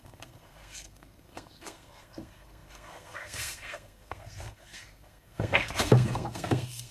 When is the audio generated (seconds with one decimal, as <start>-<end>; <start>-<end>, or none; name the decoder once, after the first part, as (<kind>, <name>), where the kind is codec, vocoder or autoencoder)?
0.0-6.9 (codec, SNAC)